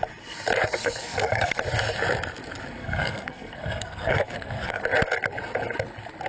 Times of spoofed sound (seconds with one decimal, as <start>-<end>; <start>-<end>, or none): 0.8-1.5; 2.8-4.8